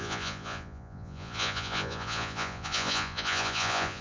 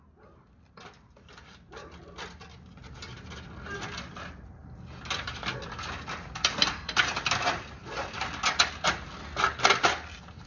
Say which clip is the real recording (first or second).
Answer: second